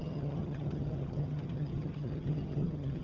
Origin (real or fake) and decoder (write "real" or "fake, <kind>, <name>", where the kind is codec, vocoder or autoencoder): fake, vocoder, HiFi-GAN